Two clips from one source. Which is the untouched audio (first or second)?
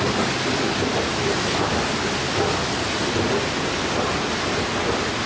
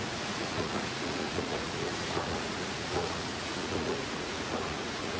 first